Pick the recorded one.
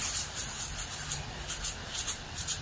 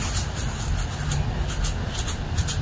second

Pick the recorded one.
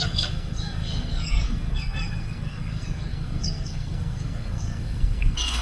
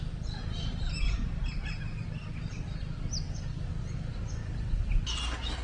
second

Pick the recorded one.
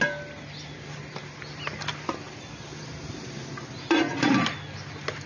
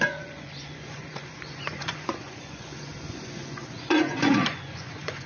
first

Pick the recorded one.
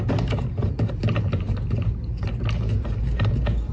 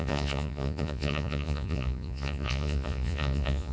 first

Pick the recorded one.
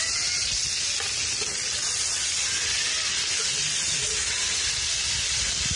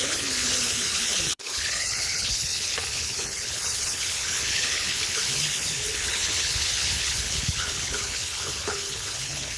first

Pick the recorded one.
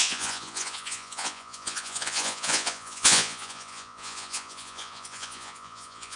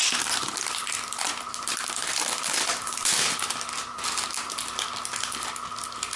second